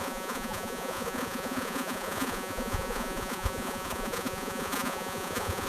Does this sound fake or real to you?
fake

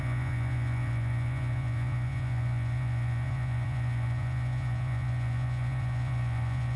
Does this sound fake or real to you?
fake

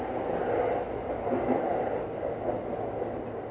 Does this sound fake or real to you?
real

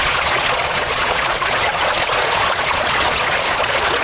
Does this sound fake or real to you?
fake